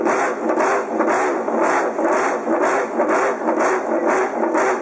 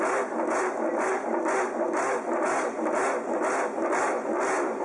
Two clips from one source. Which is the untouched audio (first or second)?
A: first